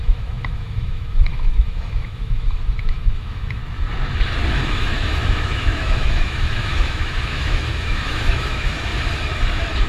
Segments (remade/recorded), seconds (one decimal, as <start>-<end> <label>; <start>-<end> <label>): 0.0-3.6 remade; 3.6-4.5 recorded; 4.5-8.9 remade; 8.9-9.9 recorded